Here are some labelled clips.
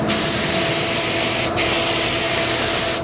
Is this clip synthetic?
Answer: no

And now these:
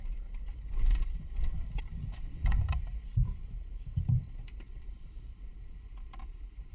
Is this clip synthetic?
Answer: yes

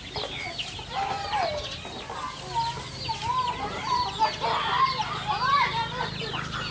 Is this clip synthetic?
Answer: no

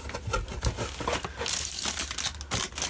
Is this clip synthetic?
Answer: no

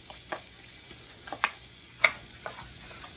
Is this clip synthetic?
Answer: yes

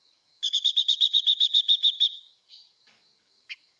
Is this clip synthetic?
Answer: yes